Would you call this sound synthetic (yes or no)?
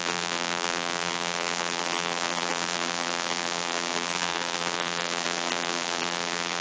yes